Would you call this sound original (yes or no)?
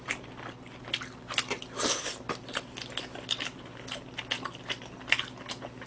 yes